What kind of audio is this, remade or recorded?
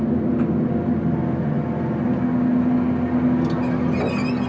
recorded